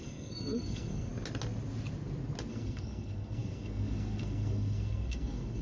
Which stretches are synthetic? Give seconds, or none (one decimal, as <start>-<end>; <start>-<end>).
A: 0.0-1.1; 2.5-5.6